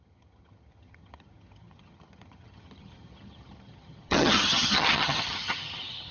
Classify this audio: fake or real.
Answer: fake